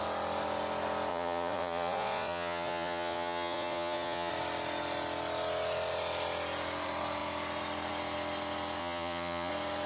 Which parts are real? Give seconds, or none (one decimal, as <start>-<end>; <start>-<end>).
0.0-1.1; 4.3-8.8; 9.5-9.9